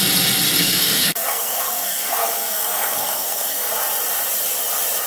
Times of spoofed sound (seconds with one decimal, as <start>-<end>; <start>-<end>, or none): 0.6-3.7